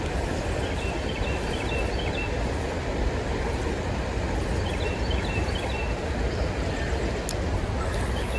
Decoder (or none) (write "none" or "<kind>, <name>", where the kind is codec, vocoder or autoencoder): none